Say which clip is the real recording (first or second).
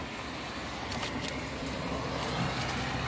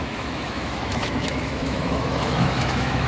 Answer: first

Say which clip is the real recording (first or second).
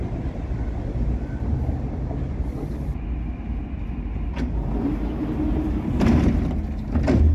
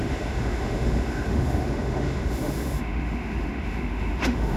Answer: first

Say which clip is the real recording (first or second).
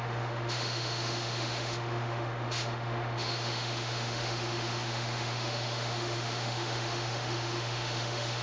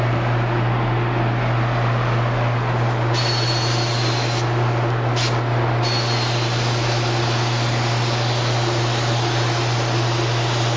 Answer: second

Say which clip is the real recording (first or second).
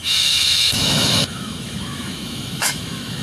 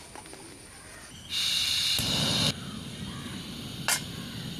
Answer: second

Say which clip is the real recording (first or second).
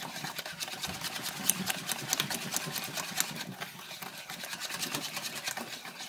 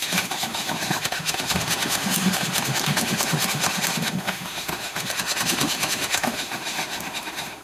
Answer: first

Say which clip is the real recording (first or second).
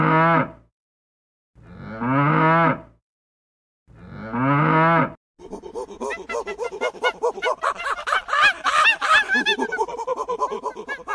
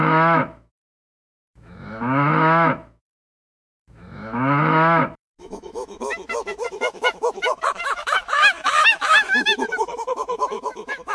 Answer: first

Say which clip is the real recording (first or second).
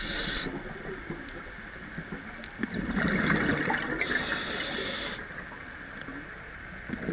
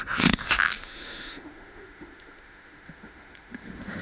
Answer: first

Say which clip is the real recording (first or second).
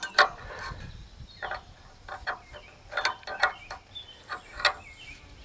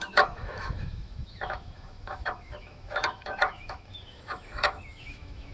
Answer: first